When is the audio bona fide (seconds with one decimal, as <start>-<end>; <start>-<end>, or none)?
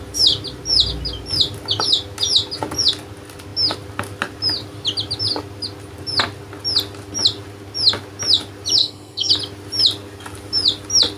0.0-8.8; 9.3-11.2